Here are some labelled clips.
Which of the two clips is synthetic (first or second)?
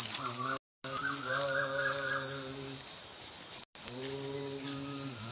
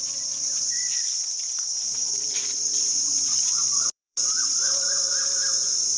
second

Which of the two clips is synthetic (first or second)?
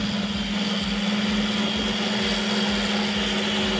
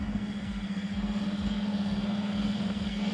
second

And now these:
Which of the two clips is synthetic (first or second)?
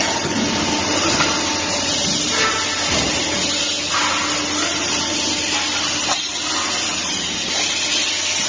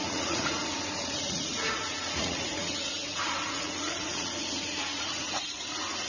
second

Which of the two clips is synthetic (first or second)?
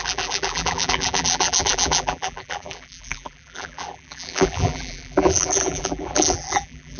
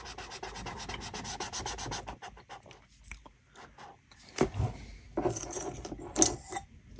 first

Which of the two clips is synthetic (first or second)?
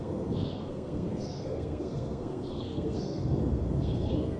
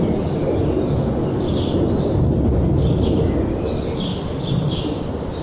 first